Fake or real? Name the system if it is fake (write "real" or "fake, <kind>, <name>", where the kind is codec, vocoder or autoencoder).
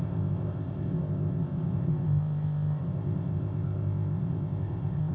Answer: fake, codec, ZipCodec